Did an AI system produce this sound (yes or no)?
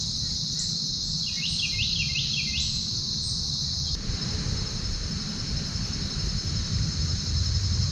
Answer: no